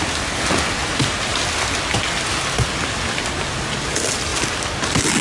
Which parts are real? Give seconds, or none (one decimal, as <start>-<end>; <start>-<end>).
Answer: 0.0-5.2